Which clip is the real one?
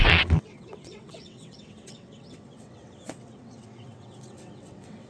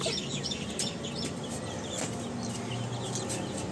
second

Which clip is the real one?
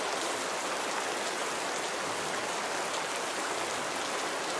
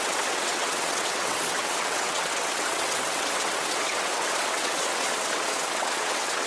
first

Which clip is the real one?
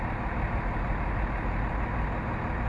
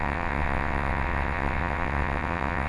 first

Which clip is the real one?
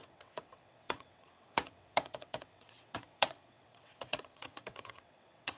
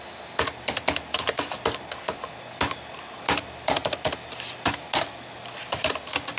second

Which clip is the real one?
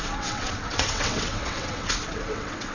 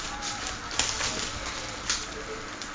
second